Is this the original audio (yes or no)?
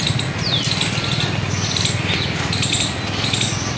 yes